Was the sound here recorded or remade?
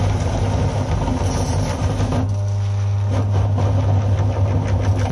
recorded